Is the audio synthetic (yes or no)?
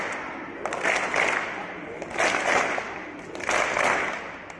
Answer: no